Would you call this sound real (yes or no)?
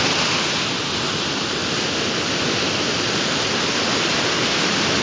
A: yes